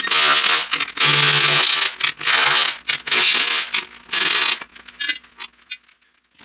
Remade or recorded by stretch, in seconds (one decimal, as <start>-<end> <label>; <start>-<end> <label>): 0.0-6.4 recorded